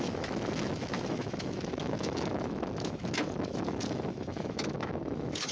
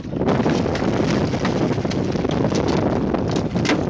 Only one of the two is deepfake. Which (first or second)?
first